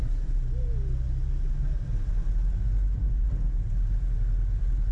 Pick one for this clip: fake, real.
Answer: real